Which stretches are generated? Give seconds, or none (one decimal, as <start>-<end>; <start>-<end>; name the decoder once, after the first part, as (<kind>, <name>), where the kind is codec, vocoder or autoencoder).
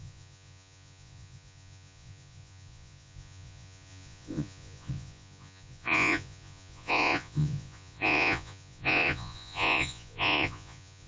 0.0-11.1 (vocoder, Vocos)